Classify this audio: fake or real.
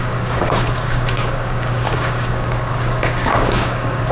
fake